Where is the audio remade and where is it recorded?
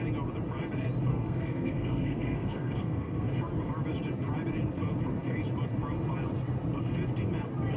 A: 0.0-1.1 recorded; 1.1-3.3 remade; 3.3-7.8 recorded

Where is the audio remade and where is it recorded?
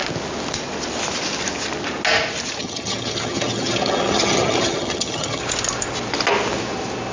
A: 0.0-2.6 recorded; 2.6-5.4 remade; 5.4-7.1 recorded